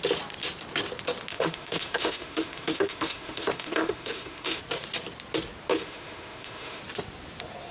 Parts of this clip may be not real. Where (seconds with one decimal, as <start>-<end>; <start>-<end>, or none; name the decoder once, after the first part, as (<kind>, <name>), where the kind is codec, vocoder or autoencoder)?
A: 1.3-4.6 (autoencoder, DAC-VAE); 5.7-6.8